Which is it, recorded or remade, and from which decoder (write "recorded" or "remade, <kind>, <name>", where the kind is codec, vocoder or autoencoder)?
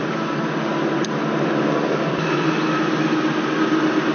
recorded